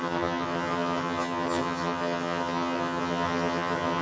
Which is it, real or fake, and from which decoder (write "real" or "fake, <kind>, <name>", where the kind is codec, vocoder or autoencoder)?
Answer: fake, vocoder, HiFi-GAN